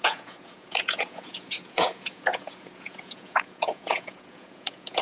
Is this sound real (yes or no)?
no